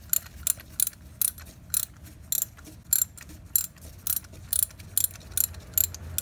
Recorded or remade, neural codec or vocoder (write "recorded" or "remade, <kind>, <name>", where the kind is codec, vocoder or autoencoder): recorded